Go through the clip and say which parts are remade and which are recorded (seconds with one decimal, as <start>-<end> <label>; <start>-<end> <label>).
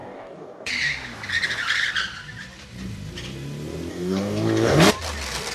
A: 0.0-0.7 remade; 0.7-3.9 recorded; 3.9-4.9 remade; 4.9-5.5 recorded